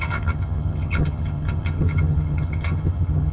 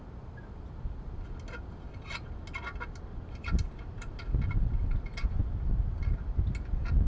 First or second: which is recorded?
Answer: second